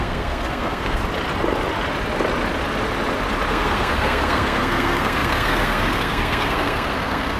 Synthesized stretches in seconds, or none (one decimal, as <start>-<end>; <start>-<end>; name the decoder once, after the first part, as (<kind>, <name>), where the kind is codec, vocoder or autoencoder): 0.0-1.0 (codec, SNAC); 3.5-7.4